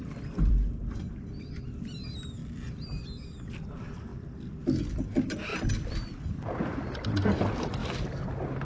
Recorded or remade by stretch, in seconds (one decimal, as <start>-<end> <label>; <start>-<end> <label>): 0.0-2.4 remade; 2.4-3.4 recorded; 3.4-4.1 remade; 4.1-4.9 recorded; 4.9-5.5 remade; 5.5-6.4 recorded; 6.4-7.8 remade; 7.8-8.6 recorded